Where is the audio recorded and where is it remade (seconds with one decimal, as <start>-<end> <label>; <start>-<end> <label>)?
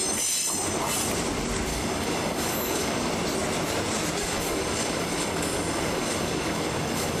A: 0.0-1.7 recorded; 1.7-3.1 remade; 3.1-4.2 recorded; 4.2-7.2 remade